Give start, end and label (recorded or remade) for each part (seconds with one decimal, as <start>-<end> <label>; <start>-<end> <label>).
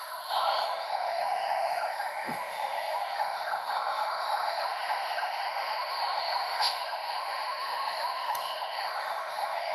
0.0-9.7 remade